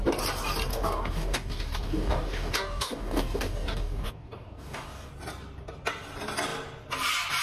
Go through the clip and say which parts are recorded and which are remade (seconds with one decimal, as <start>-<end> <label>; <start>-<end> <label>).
0.0-0.7 recorded; 0.7-5.1 remade; 5.1-7.4 recorded